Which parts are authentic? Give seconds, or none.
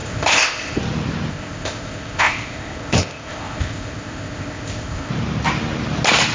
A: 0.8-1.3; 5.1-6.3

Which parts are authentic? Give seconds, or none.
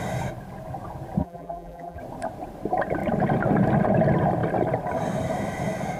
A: 0.0-1.2; 2.0-6.0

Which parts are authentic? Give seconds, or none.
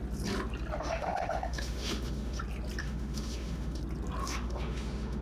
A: 0.0-0.8; 2.4-2.8; 3.8-4.2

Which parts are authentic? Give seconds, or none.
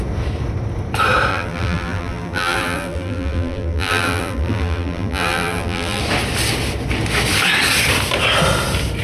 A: 0.0-1.3; 6.0-9.0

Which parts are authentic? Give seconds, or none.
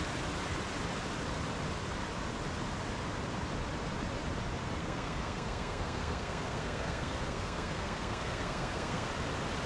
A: 0.0-4.8; 9.1-9.7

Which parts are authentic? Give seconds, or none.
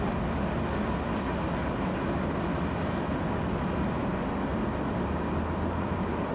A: 0.0-6.3